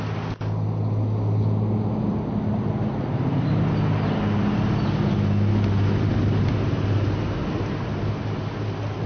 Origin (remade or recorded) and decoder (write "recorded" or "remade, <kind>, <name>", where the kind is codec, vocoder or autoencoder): recorded